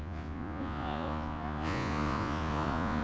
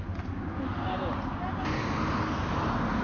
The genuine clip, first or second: second